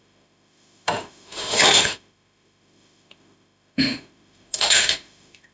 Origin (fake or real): fake